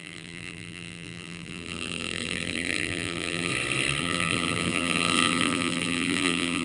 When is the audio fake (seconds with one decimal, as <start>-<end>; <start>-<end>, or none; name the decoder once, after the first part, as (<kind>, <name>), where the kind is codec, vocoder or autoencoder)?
0.0-3.5 (vocoder, BigVGAN v2); 4.0-6.6